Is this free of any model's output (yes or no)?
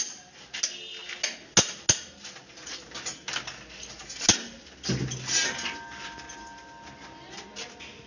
yes